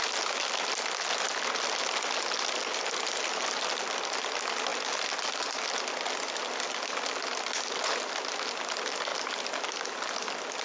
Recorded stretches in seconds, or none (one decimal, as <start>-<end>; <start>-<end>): 0.0-10.6